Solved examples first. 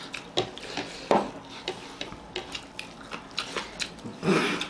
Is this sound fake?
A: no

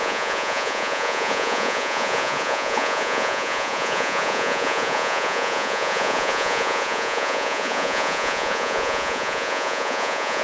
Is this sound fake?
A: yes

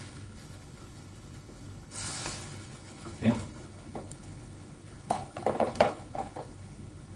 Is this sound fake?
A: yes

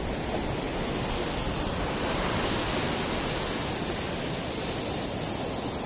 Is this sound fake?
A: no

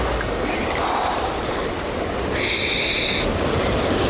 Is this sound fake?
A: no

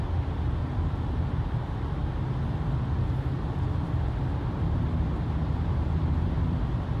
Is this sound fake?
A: no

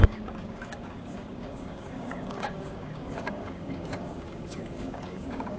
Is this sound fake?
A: yes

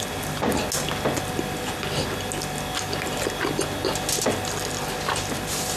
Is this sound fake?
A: no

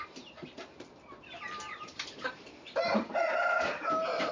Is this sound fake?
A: yes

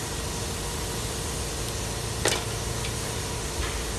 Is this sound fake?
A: no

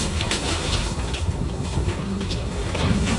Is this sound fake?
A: yes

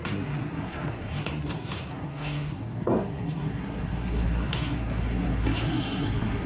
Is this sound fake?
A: yes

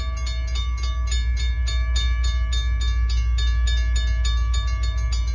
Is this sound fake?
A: no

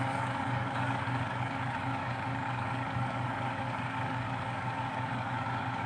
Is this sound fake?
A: yes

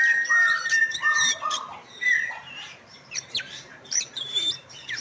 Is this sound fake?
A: yes